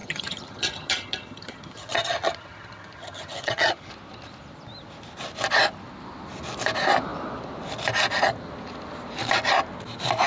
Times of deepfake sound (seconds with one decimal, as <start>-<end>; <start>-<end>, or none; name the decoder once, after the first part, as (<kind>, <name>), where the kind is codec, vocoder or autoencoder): 0.0-3.9 (vocoder, HiFi-GAN)